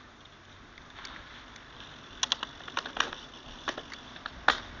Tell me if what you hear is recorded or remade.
recorded